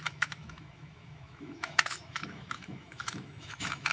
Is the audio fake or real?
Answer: fake